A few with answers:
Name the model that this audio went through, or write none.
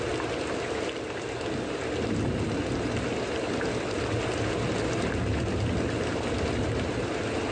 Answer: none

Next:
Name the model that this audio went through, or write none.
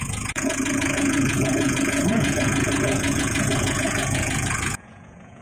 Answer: vocoder, Vocos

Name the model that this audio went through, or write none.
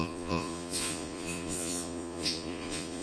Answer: vocoder, Vocos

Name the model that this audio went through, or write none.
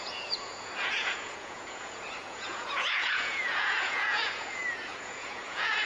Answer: vocoder, Vocos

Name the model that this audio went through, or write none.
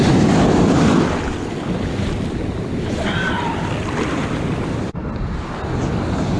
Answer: none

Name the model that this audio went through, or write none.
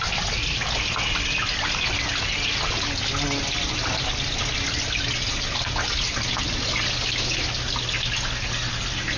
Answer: none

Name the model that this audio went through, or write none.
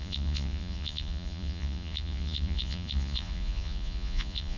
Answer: vocoder, Vocos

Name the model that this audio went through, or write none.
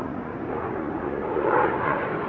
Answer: vocoder, Vocos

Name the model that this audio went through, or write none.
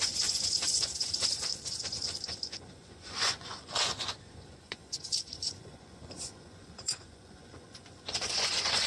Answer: vocoder, Vocos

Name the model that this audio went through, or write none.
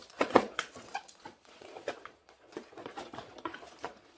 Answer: vocoder, Vocos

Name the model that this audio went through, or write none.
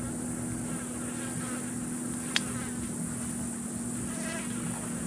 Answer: none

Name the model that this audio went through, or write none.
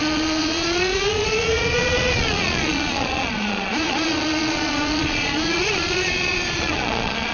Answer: vocoder, Vocos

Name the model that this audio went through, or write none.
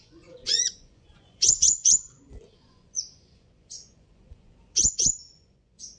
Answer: vocoder, Vocos